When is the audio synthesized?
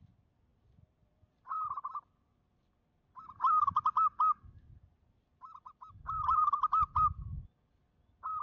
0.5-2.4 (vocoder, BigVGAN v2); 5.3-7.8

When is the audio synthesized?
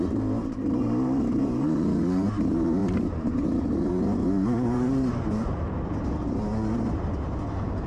0.0-7.9 (vocoder, BigVGAN v2)